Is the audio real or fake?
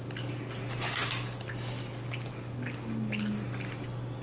real